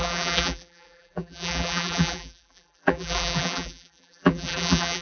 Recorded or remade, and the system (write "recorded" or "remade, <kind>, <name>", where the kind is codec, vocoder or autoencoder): remade, vocoder, BigVGAN v2